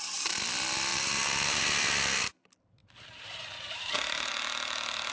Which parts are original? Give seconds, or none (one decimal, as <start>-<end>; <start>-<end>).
0.0-0.9; 1.6-2.8; 4.3-5.1